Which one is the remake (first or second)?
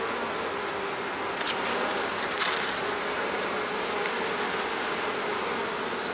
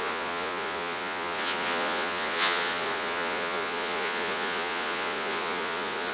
second